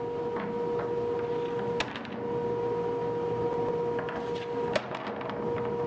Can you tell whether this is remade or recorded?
recorded